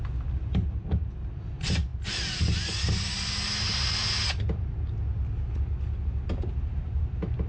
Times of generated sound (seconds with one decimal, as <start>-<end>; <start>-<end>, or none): none

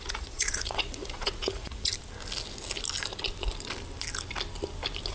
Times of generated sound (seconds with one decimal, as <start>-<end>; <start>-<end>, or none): 0.0-1.9

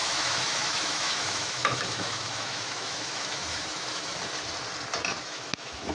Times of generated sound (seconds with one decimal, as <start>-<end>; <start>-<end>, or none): 0.0-4.1; 5.2-5.9

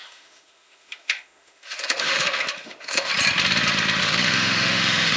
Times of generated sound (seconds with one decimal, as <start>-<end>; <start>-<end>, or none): 0.0-3.1; 4.0-5.2